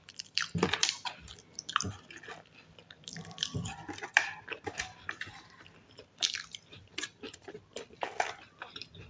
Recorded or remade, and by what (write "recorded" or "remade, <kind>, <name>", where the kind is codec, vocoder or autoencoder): remade, vocoder, BigVGAN v2